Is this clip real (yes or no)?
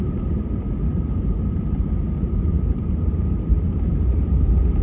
no